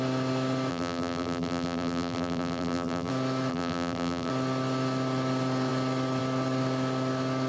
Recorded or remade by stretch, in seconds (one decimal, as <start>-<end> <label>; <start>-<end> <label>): 0.0-0.7 recorded; 0.7-3.1 remade; 3.1-3.5 recorded; 3.5-4.3 remade; 4.3-7.5 recorded